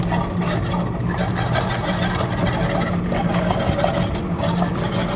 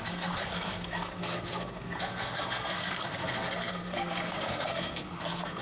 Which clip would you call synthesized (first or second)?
second